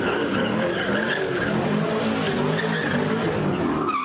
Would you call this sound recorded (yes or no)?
yes